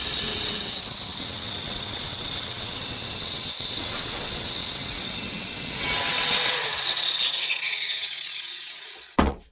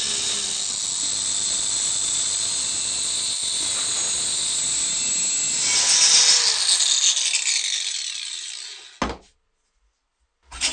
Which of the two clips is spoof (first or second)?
first